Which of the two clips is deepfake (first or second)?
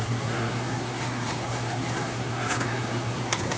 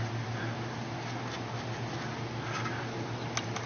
first